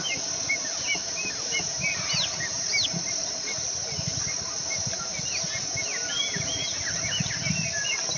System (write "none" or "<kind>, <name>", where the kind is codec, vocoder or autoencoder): none